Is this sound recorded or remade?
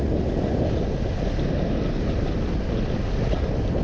recorded